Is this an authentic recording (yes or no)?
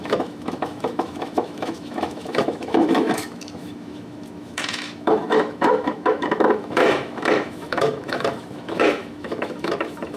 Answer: no